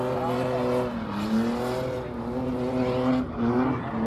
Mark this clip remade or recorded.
recorded